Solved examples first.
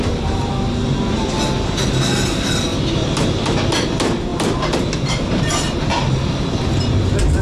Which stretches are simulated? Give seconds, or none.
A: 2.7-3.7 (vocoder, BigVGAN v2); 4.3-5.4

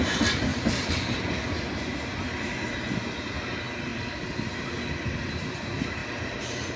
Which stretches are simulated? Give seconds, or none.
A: 0.5-1.2 (vocoder, BigVGAN v2); 3.9-5.5; 6.0-6.8

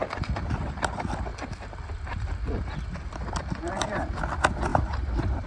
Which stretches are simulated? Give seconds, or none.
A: 4.7-5.5 (vocoder, BigVGAN v2)

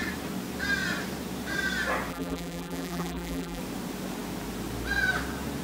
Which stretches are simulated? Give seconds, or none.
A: 2.1-3.6 (vocoder, BigVGAN v2)

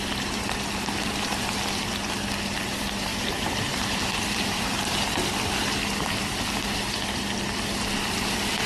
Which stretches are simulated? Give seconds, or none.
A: 3.1-4.9 (vocoder, BigVGAN v2)

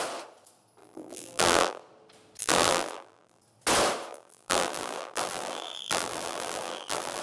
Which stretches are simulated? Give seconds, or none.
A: 0.8-1.8 (vocoder, BigVGAN v2); 2.4-3.4; 4.1-7.2

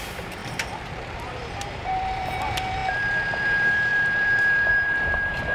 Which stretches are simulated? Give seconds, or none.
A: 0.0-5.5 (vocoder, BigVGAN v2)

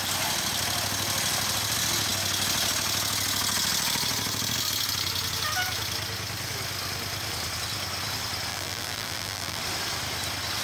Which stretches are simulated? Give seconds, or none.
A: 8.5-9.6 (vocoder, BigVGAN v2)